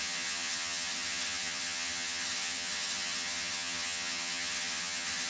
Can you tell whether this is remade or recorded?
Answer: remade